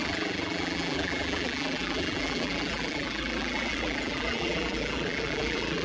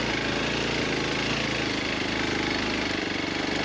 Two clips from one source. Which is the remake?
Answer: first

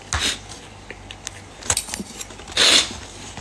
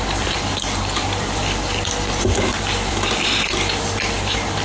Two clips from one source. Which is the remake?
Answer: second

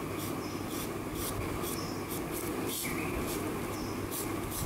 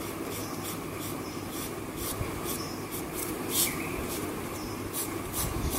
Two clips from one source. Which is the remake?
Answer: second